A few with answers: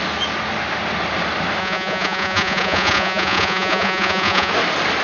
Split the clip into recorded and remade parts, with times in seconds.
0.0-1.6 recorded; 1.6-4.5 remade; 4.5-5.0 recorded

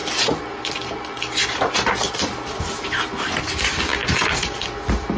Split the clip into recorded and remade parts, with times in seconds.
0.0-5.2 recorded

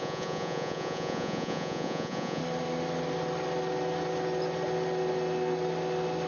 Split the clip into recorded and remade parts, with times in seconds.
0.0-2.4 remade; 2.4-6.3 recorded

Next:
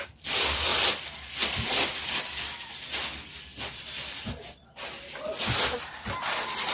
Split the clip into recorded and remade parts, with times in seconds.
0.0-6.7 recorded

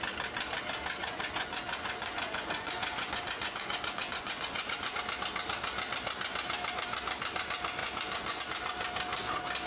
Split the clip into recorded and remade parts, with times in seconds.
0.0-1.0 recorded; 1.0-5.0 remade; 5.0-7.8 recorded; 7.8-8.4 remade; 8.4-9.7 recorded

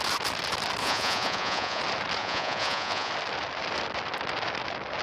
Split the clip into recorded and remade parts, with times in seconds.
0.0-0.8 recorded; 0.8-1.8 remade; 1.8-2.2 recorded; 2.2-3.1 remade; 3.1-5.0 recorded

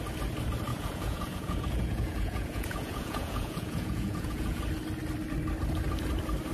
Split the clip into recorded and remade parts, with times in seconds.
0.0-0.7 recorded; 0.7-4.6 remade; 4.6-6.5 recorded